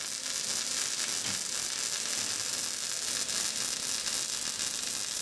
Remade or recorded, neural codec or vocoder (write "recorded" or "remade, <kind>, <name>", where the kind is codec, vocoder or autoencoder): recorded